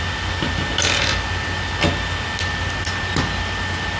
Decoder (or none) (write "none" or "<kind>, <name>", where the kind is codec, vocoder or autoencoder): none